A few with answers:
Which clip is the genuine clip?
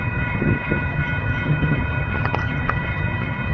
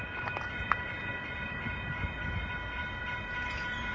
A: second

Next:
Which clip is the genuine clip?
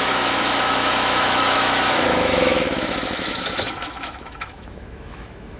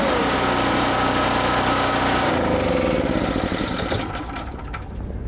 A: second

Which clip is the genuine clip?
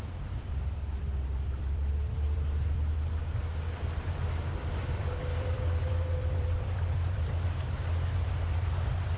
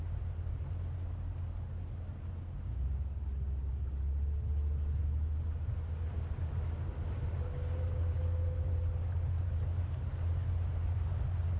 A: second